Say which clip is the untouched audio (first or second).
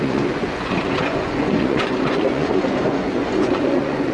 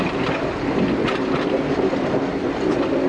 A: second